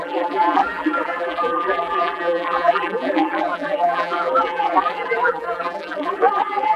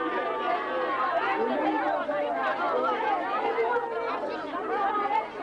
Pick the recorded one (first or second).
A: second